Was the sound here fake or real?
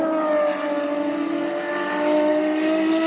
real